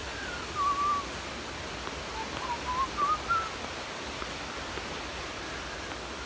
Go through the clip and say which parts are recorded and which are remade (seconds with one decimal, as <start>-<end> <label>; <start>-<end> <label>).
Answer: 0.0-6.3 recorded